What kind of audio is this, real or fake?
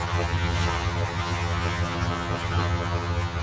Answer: fake